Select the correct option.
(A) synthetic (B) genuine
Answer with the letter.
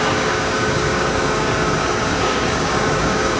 A